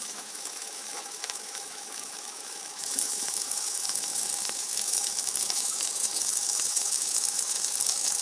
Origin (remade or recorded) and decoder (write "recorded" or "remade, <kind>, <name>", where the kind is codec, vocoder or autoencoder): remade, autoencoder, DAC-VAE